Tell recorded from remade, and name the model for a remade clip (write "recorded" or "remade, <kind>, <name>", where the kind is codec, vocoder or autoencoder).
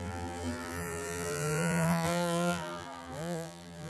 remade, vocoder, BigVGAN v2